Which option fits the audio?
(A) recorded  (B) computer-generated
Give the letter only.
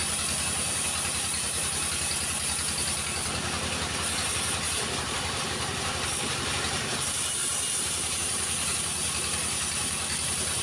B